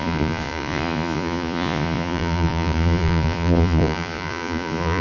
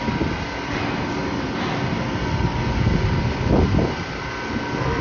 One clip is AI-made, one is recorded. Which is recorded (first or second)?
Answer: second